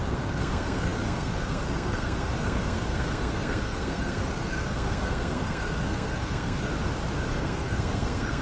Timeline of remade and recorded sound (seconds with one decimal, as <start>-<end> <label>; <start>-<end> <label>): 0.0-6.7 remade; 6.7-7.3 recorded; 7.3-8.4 remade